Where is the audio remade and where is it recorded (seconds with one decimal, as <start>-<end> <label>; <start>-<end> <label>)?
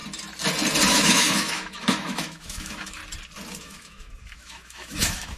0.0-0.9 recorded; 0.9-3.0 remade; 3.0-3.6 recorded; 3.6-5.4 remade